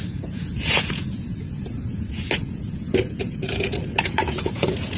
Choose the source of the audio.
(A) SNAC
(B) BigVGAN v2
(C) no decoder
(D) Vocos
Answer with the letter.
D